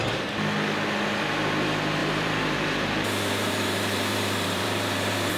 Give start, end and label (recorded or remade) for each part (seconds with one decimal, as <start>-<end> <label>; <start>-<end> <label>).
0.0-2.0 recorded; 2.0-5.4 remade